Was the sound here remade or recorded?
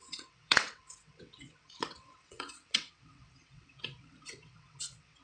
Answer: remade